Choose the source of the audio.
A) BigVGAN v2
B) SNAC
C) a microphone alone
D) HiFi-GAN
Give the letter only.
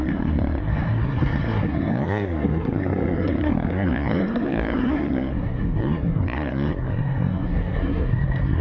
B